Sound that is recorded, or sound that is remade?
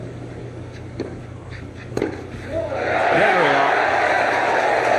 remade